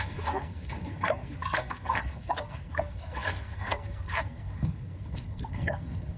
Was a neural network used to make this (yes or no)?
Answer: yes